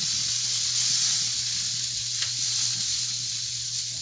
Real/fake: real